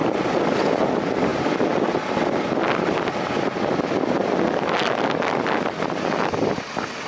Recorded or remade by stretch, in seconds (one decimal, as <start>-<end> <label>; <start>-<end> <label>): 0.0-7.1 recorded